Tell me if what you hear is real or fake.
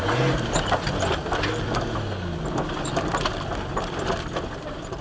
real